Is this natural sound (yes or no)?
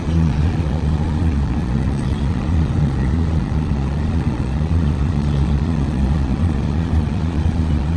no